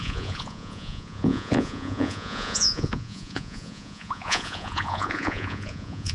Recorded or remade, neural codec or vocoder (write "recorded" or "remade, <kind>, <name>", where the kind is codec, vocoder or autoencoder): remade, vocoder, Vocos